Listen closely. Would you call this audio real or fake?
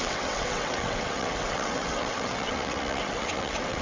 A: fake